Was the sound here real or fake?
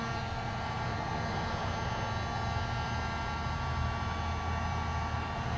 real